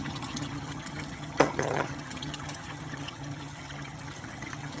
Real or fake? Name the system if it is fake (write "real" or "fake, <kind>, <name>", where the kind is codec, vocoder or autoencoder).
fake, vocoder, HiFi-GAN